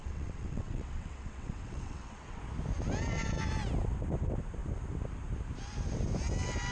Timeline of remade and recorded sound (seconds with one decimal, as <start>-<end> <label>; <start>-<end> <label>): 0.0-2.4 remade; 2.4-6.7 recorded